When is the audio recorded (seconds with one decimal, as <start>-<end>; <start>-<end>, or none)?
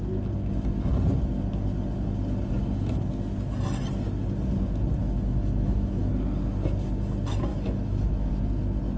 0.0-5.0; 6.1-7.5; 8.3-9.0